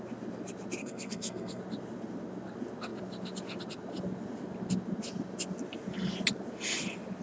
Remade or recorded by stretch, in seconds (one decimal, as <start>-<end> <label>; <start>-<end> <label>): 0.0-0.8 recorded; 0.8-1.6 remade; 1.6-7.2 recorded

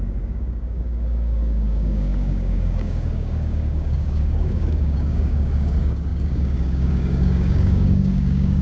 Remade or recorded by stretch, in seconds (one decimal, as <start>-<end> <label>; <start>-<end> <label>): 0.0-8.6 remade

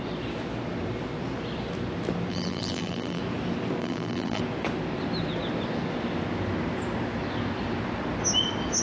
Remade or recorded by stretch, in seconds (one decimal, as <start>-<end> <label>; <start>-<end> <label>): 0.0-2.3 recorded; 2.3-3.2 remade; 3.2-3.8 recorded; 3.8-4.4 remade; 4.4-8.8 recorded

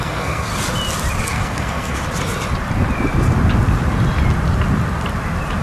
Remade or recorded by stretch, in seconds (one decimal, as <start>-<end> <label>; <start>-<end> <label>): 0.0-0.5 remade; 0.5-1.2 recorded; 1.2-2.0 remade; 2.0-5.6 recorded

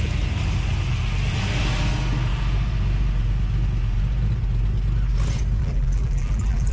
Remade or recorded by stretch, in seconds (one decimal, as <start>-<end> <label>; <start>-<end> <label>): 0.0-5.6 recorded; 5.6-6.7 remade

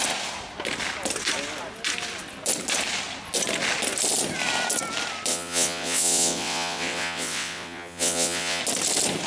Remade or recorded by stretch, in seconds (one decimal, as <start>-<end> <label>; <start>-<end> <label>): 0.0-5.3 recorded; 5.3-8.6 remade; 8.6-9.3 recorded